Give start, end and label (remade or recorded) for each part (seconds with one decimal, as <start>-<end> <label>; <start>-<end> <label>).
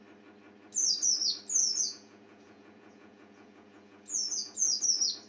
0.0-1.6 recorded; 1.6-4.8 remade; 4.8-5.3 recorded